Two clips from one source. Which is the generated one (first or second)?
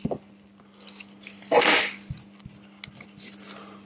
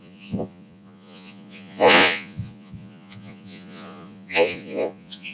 second